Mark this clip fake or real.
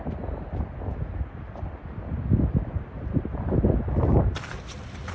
real